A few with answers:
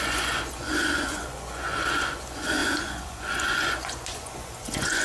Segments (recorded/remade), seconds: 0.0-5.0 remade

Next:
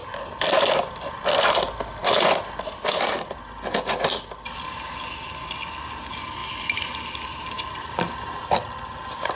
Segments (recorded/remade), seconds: 0.0-9.4 recorded

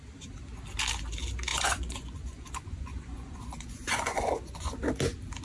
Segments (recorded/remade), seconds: 0.0-1.5 recorded; 1.5-4.7 remade; 4.7-5.4 recorded

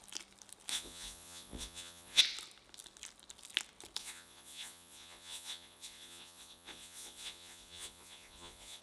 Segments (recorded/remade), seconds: 0.0-0.7 recorded; 0.7-2.2 remade; 2.2-4.0 recorded; 4.0-8.8 remade

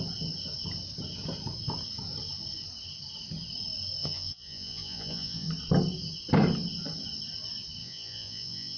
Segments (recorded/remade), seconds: 0.0-4.0 recorded; 4.0-5.5 remade; 5.5-7.8 recorded; 7.8-8.8 remade

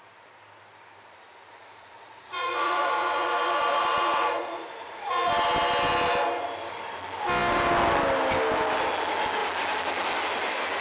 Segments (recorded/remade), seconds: 0.0-1.5 recorded; 1.5-5.3 remade; 5.3-10.8 recorded

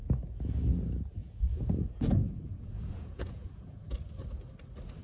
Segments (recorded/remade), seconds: 0.0-1.2 recorded; 1.2-3.9 remade; 3.9-5.0 recorded

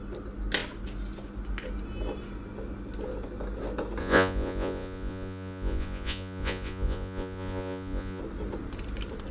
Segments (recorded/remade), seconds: 0.0-4.0 recorded; 4.0-8.2 remade; 8.2-9.3 recorded